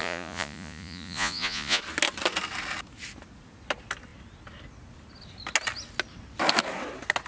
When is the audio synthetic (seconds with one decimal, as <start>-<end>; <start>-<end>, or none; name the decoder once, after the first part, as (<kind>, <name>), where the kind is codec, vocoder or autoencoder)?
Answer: 0.0-1.8 (vocoder, Vocos)